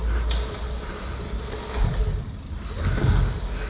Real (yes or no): yes